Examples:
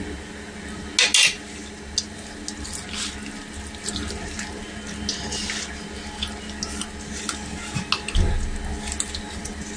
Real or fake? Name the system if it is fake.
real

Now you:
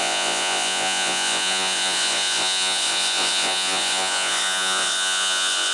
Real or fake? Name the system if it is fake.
fake, vocoder, Vocos